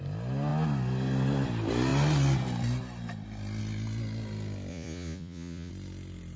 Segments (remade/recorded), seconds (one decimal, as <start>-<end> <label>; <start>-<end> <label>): 0.0-4.7 recorded; 4.7-5.7 remade; 5.7-6.4 recorded

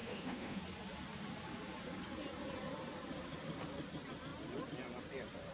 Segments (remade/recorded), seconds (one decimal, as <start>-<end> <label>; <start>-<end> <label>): 0.0-0.6 remade; 0.6-5.5 recorded

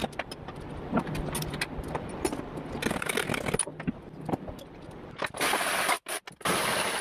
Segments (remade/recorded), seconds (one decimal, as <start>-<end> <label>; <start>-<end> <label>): 0.0-7.0 recorded

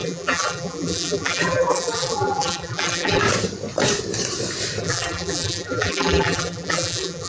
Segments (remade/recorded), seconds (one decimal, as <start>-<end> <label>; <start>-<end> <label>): 0.0-3.2 remade; 3.2-4.8 recorded; 4.8-7.3 remade

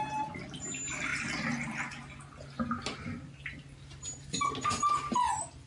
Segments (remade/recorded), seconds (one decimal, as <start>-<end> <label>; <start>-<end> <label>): 0.0-5.7 recorded

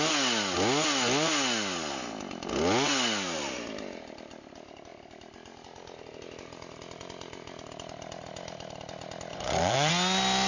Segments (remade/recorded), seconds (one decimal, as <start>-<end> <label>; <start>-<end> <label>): 0.0-9.3 recorded; 9.3-9.9 remade; 9.9-10.5 recorded

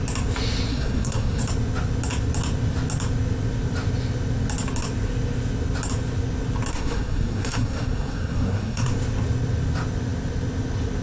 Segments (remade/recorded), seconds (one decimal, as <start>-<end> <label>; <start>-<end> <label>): 0.0-0.7 recorded; 0.7-1.4 remade; 1.4-6.7 recorded; 6.7-8.9 remade; 8.9-11.0 recorded